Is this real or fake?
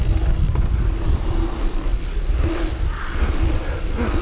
real